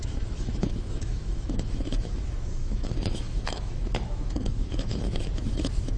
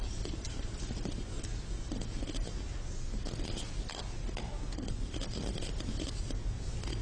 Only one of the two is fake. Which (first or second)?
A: first